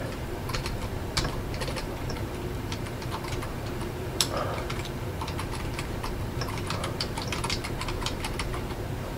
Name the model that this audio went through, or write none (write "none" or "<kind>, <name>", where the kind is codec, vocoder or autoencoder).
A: vocoder, BigVGAN v2